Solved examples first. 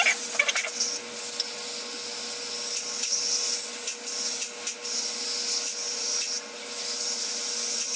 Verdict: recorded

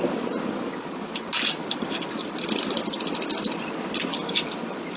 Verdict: recorded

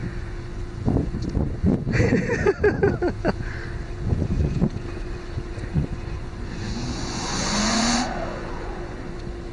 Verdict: remade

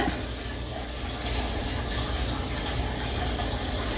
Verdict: recorded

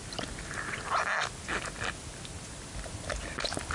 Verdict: recorded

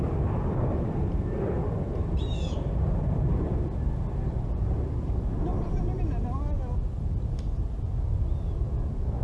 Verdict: recorded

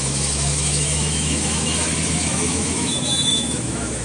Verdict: remade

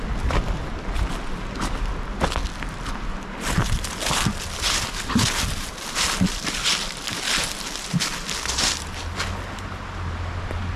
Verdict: recorded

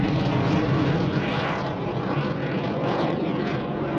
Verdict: remade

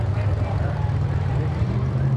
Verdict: remade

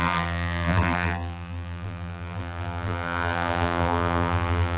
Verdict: remade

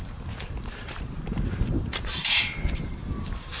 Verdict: remade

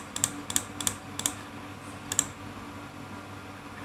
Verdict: recorded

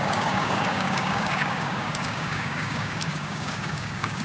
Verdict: remade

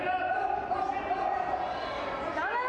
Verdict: recorded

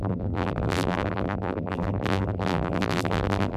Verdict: remade